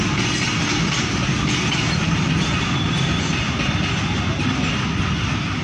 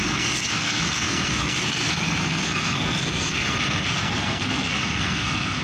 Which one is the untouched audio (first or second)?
first